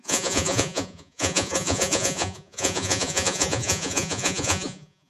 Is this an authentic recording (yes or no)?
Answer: no